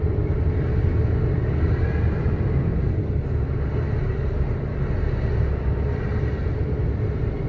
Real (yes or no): yes